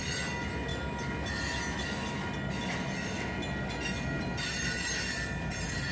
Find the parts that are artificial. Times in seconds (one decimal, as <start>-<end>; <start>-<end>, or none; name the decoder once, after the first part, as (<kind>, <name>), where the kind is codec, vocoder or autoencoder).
none